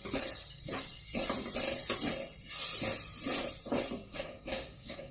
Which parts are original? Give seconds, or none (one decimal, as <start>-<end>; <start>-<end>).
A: 0.0-4.0